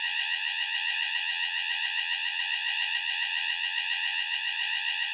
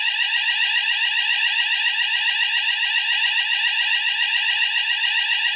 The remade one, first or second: first